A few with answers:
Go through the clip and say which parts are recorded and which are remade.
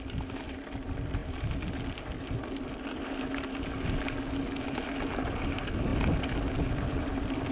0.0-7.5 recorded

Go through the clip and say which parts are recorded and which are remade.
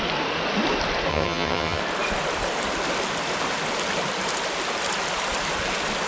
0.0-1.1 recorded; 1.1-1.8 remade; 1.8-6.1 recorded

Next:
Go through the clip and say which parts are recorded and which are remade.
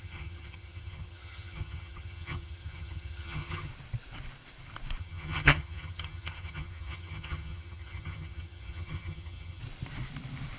0.0-3.7 remade; 3.7-5.0 recorded; 5.0-9.6 remade; 9.6-10.6 recorded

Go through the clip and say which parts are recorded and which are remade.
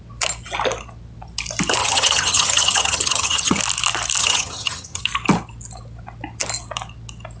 0.0-1.8 recorded; 1.8-3.6 remade; 3.6-4.2 recorded; 4.2-5.0 remade; 5.0-7.4 recorded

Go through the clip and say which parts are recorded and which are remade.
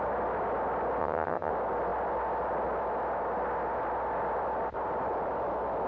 0.0-1.0 recorded; 1.0-1.5 remade; 1.5-5.9 recorded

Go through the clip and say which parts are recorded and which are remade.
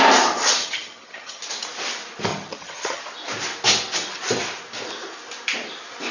0.0-0.6 recorded; 0.6-1.4 remade; 1.4-2.3 recorded; 2.3-3.0 remade; 3.0-6.1 recorded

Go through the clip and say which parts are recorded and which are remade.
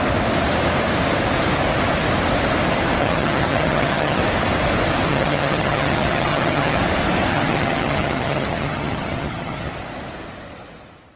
0.0-3.0 recorded; 3.0-4.2 remade; 4.2-5.1 recorded; 5.1-6.8 remade; 6.8-7.3 recorded; 7.3-9.7 remade; 9.7-11.2 recorded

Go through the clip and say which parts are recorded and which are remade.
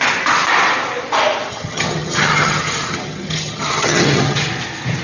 0.0-1.5 recorded; 1.5-4.5 remade; 4.5-5.0 recorded